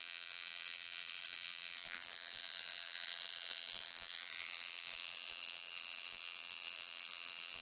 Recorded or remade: remade